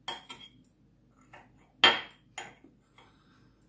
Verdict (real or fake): real